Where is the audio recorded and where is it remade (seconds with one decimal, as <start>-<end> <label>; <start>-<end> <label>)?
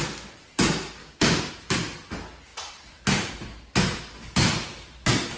0.0-1.0 recorded; 1.0-1.5 remade; 1.5-5.4 recorded